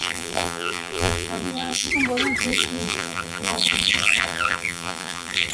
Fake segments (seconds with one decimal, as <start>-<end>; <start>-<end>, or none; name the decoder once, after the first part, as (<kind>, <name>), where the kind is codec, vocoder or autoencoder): 0.0-1.9 (vocoder, BigVGAN v2); 2.4-5.5